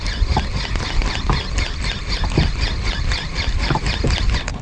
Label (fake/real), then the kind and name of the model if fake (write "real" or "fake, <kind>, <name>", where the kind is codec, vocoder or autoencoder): real